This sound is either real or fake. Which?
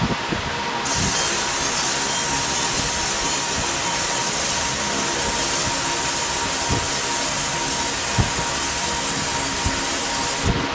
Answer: real